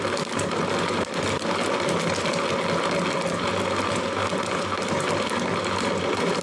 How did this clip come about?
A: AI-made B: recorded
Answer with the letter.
B